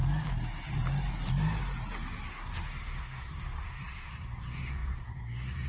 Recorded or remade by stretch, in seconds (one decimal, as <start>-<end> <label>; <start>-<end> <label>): 0.0-2.3 recorded; 2.3-5.7 remade